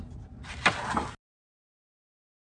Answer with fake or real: real